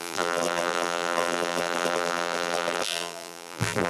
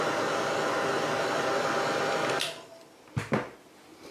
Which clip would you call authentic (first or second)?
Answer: second